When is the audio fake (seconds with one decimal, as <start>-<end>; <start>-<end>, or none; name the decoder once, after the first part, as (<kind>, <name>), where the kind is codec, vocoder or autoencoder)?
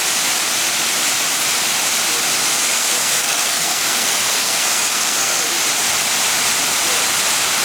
2.4-5.4 (codec, SNAC)